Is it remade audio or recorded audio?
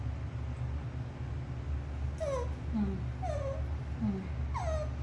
recorded